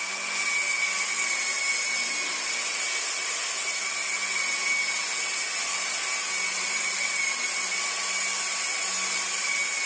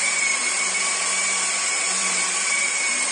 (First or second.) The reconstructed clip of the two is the second